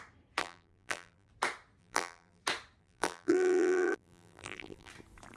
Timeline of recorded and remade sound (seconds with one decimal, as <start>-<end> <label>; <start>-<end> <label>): 0.0-0.4 recorded; 0.4-1.3 remade; 1.3-1.8 recorded; 1.8-2.4 remade; 2.4-2.8 recorded; 2.8-4.9 remade; 4.9-5.4 recorded